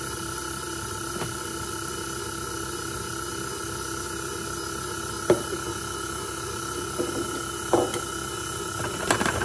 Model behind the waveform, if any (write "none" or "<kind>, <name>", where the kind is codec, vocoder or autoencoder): none